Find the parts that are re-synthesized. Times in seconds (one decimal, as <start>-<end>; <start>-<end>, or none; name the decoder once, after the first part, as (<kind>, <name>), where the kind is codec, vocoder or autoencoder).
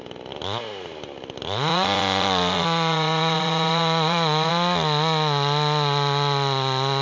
1.7-4.5 (vocoder, Vocos)